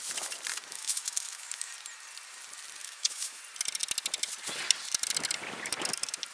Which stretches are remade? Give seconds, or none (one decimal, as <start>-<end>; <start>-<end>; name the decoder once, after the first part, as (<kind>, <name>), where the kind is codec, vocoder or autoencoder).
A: 0.7-1.7 (autoencoder, DAC-VAE); 2.8-3.4